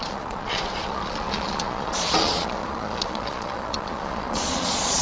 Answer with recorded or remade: remade